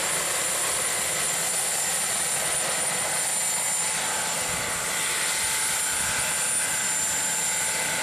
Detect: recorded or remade recorded